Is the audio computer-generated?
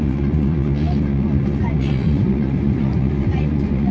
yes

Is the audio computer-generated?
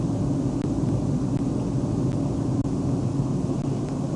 no